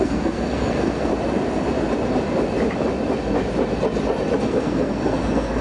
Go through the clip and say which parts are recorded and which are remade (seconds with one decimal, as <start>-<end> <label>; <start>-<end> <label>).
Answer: 0.0-1.1 remade; 1.1-4.4 recorded; 4.4-5.6 remade